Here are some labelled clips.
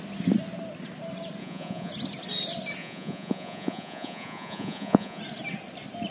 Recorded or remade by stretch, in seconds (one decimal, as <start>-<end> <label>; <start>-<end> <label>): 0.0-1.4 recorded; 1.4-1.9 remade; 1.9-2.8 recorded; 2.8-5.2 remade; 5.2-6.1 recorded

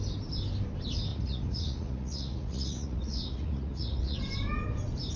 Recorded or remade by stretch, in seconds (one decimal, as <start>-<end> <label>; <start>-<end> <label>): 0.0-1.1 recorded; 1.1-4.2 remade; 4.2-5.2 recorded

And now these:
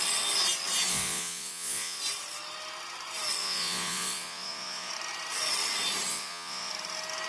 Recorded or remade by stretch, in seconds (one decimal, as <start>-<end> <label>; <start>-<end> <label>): 0.0-0.9 recorded; 0.9-2.0 remade; 2.0-3.4 recorded; 3.4-4.9 remade; 4.9-6.1 recorded; 6.1-6.7 remade; 6.7-7.3 recorded

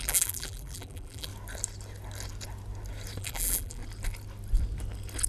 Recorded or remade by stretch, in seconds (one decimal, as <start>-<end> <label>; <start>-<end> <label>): 0.0-1.3 remade; 1.3-3.2 recorded; 3.2-3.8 remade; 3.8-5.3 recorded